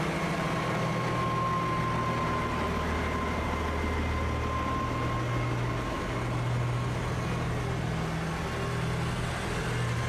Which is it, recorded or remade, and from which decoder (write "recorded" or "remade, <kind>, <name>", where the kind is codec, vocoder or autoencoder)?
recorded